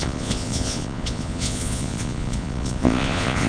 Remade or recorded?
remade